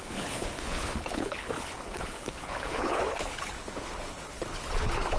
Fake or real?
fake